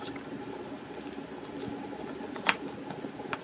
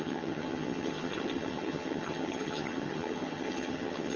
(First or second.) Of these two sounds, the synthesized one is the second